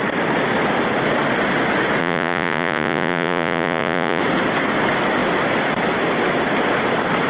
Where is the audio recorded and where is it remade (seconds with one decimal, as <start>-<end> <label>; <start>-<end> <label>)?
0.0-2.0 recorded; 2.0-4.2 remade; 4.2-7.3 recorded